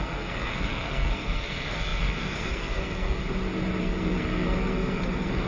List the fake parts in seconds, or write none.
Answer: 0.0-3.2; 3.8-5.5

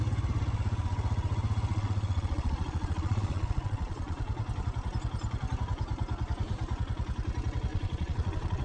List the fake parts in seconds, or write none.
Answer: 1.7-4.2; 7.7-8.6

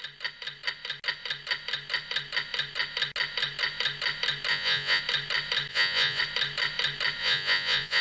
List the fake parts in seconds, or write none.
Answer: 4.5-5.0; 5.7-6.2; 7.2-8.0

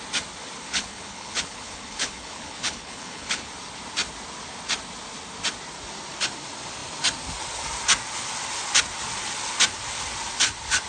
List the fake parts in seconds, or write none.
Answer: 0.6-3.5

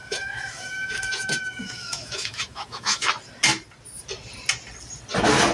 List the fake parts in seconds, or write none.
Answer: 0.0-3.1